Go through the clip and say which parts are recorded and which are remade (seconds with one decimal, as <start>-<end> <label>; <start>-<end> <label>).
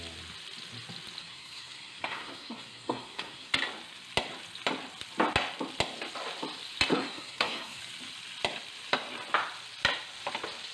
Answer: 0.0-1.2 recorded; 1.2-3.5 remade; 3.5-6.9 recorded; 6.9-7.8 remade; 7.8-10.7 recorded